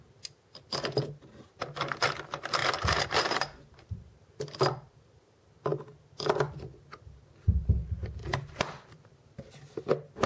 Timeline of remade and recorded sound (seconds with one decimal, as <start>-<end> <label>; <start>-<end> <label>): 0.0-2.6 recorded; 2.6-4.4 remade; 4.4-8.2 recorded; 8.2-9.5 remade; 9.5-10.3 recorded